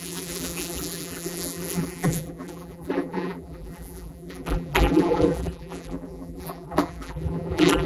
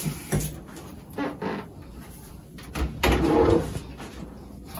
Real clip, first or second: second